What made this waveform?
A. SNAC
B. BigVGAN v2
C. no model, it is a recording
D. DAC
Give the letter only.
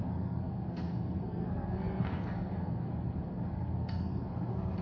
A